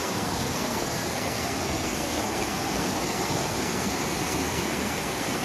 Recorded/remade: remade